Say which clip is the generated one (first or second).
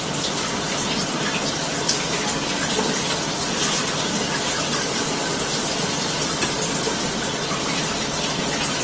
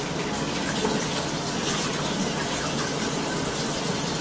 first